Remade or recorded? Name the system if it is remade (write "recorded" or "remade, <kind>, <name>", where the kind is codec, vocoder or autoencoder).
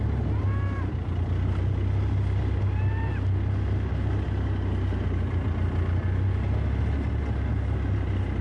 recorded